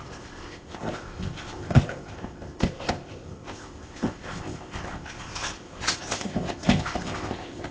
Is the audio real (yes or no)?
no